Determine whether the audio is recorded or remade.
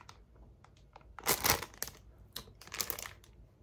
recorded